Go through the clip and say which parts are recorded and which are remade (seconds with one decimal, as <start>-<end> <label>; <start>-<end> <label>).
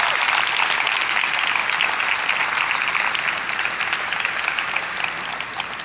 0.0-5.8 recorded